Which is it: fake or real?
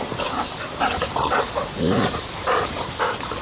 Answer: real